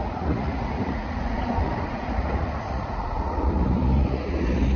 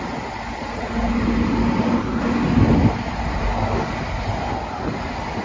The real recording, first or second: second